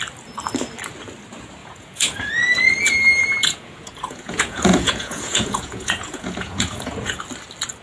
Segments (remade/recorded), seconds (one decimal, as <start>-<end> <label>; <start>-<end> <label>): 0.0-1.6 recorded; 1.6-2.3 remade; 2.3-3.2 recorded; 3.2-7.2 remade; 7.2-7.8 recorded